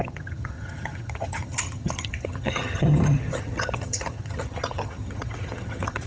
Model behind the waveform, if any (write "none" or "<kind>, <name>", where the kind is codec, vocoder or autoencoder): vocoder, HiFi-GAN